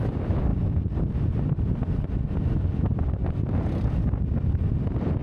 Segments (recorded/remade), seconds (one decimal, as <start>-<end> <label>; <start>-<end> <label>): 0.0-0.5 remade; 0.5-3.6 recorded; 3.6-5.2 remade